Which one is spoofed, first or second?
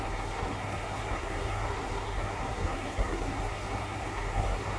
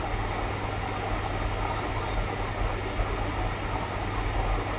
first